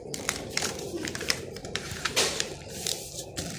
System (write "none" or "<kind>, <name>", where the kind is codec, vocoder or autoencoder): vocoder, BigVGAN v2